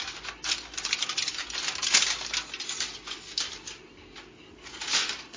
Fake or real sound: real